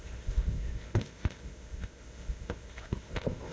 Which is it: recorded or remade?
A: remade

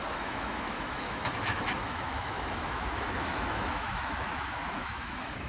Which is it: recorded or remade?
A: remade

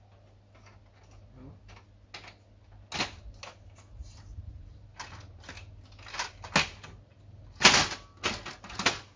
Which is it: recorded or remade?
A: recorded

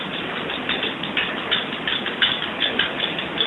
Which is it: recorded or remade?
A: recorded